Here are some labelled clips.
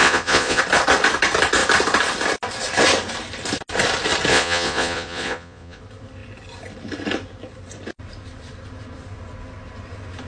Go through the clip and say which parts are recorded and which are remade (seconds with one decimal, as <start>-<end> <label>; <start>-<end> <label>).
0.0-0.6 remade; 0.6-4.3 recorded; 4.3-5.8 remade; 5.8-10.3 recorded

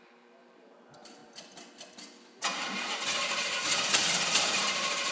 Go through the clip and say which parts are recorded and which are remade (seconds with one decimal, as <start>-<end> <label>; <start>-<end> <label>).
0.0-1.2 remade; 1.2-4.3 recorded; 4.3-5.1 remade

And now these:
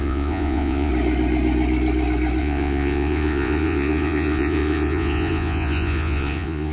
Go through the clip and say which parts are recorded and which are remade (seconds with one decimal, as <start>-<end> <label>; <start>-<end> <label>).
0.0-0.9 remade; 0.9-2.4 recorded; 2.4-6.7 remade

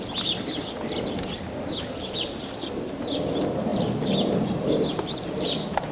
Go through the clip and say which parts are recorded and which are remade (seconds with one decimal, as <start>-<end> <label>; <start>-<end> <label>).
0.0-5.9 recorded

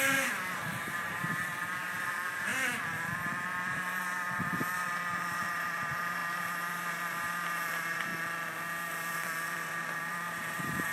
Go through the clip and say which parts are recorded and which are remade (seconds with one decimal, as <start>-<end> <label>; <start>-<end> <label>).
0.0-2.5 remade; 2.5-3.7 recorded; 3.7-8.1 remade; 8.1-8.8 recorded; 8.8-10.9 remade

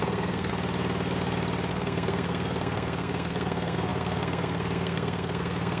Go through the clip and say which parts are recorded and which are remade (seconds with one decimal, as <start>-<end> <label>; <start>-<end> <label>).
0.0-0.5 remade; 0.5-1.7 recorded; 1.7-5.8 remade